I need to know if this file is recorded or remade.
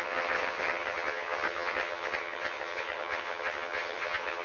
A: remade